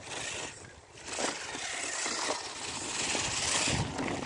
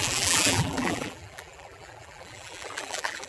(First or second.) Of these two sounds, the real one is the first